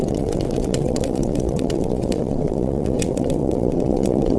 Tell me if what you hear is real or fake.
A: fake